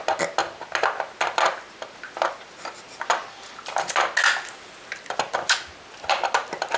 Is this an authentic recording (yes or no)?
yes